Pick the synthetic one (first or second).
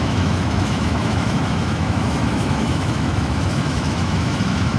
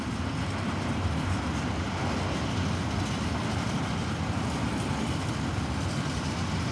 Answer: first